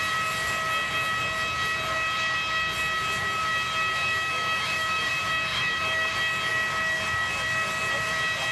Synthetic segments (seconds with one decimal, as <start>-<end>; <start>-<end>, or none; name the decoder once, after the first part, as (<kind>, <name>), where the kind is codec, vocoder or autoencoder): 4.0-5.1 (autoencoder, DAC-VAE); 5.5-6.1